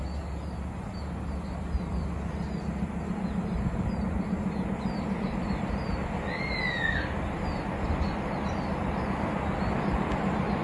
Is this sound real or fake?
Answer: real